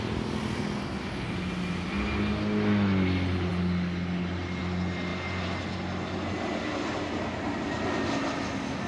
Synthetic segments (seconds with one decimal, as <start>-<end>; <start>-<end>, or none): none